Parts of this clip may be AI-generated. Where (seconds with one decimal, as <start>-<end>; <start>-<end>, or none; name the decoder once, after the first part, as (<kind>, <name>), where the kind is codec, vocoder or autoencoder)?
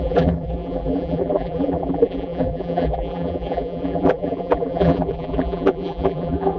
0.0-6.6 (vocoder, BigVGAN v2)